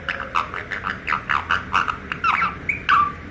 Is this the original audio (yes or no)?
yes